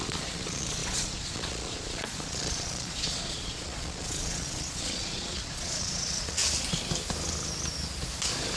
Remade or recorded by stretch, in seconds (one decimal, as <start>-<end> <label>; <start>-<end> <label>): 0.0-6.4 remade; 6.4-8.6 recorded